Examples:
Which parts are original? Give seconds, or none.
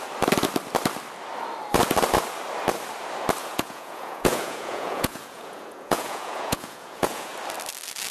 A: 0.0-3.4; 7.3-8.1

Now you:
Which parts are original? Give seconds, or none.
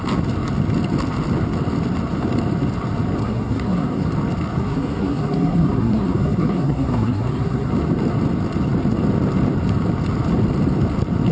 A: 0.0-3.2; 4.1-4.6; 7.7-11.3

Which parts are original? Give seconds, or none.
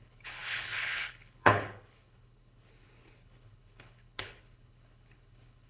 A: none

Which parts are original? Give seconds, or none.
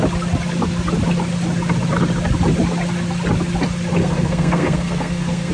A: 0.0-4.0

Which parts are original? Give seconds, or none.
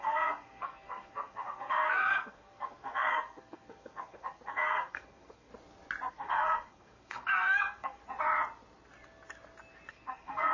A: 5.5-6.1; 8.0-9.9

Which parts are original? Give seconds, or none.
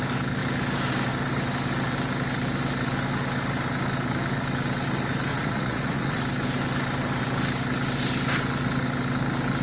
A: 0.0-5.3; 6.2-9.6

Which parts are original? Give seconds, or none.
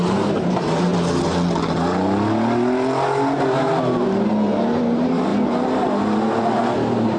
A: 0.9-4.8; 5.3-6.4